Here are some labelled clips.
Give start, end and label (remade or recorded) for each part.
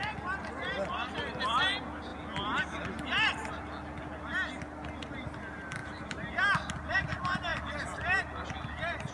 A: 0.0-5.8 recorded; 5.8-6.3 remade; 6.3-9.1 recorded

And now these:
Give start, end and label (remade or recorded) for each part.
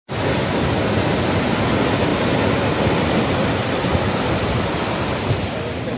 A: 0.0-6.0 recorded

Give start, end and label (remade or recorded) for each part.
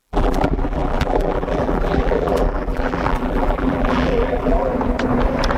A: 0.0-4.7 remade; 4.7-5.6 recorded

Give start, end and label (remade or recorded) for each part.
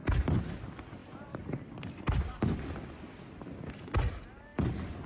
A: 0.0-0.6 remade; 0.6-1.0 recorded; 1.0-2.6 remade; 2.6-4.5 recorded; 4.5-5.1 remade